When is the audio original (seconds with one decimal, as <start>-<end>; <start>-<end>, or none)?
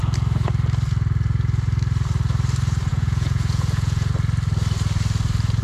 0.0-2.9; 4.1-5.6